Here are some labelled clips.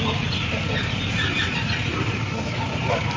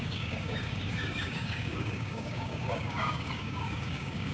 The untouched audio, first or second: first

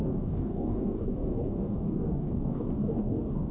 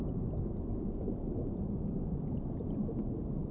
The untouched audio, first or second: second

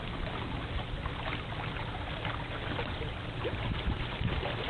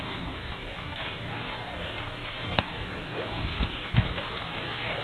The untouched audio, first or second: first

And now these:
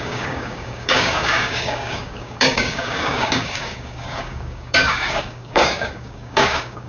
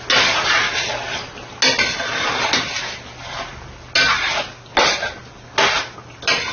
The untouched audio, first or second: second